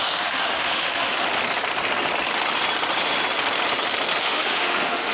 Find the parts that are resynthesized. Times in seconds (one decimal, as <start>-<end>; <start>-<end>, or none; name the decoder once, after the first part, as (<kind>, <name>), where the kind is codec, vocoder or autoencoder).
0.0-1.1 (autoencoder, DAC-VAE); 4.2-5.1